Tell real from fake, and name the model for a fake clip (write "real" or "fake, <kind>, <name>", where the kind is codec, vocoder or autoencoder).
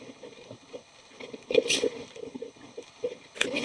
fake, codec, HILCodec